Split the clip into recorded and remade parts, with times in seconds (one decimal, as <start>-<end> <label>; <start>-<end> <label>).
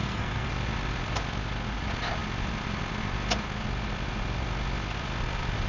0.0-0.5 remade; 0.5-5.7 recorded